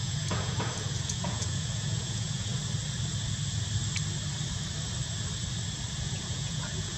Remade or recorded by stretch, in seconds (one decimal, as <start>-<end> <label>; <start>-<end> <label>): 0.0-2.5 remade; 2.5-6.0 recorded; 6.0-7.0 remade